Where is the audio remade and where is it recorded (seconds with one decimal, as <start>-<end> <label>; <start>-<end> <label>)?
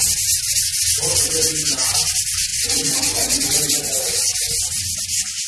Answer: 0.0-2.5 recorded; 2.5-3.6 remade; 3.6-5.5 recorded